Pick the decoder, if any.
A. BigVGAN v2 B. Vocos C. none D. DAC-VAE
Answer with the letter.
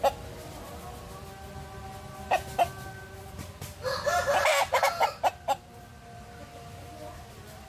C